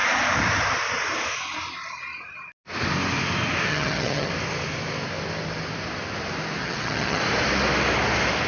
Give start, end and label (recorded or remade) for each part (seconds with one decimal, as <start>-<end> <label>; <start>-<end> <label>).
0.0-3.7 recorded; 3.7-4.3 remade; 4.3-6.6 recorded; 6.6-7.2 remade; 7.2-8.5 recorded